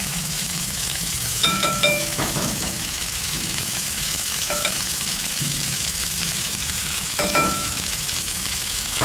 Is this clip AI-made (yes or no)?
yes